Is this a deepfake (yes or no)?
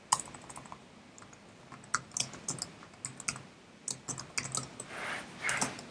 no